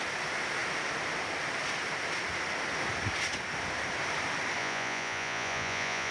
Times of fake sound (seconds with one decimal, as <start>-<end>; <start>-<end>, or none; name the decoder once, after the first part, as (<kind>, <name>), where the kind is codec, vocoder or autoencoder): 4.6-6.1 (vocoder, Vocos)

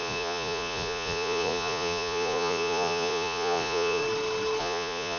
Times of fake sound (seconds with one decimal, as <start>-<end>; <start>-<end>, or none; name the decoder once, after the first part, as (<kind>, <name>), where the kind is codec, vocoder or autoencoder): 0.0-4.0 (vocoder, Vocos); 4.6-5.2

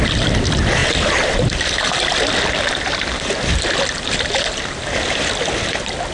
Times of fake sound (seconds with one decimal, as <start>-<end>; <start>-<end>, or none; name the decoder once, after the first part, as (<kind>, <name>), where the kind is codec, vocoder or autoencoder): none

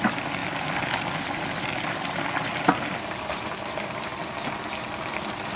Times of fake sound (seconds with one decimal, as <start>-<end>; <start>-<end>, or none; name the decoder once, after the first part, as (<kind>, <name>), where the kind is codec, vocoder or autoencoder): none

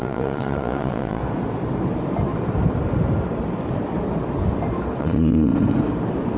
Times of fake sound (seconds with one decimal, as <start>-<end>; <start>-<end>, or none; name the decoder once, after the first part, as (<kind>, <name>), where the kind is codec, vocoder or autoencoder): 0.0-1.2 (vocoder, Vocos); 5.0-5.5

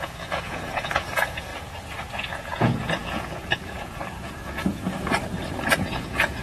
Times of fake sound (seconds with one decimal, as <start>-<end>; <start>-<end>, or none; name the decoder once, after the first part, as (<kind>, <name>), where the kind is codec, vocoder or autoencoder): 0.0-1.5 (vocoder, Vocos); 2.1-4.9; 5.8-6.4